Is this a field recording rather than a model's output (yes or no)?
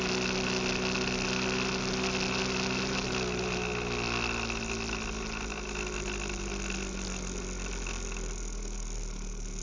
yes